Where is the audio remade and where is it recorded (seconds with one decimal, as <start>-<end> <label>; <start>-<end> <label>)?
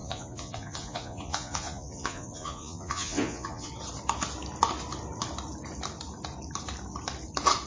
0.0-3.7 remade; 3.7-7.7 recorded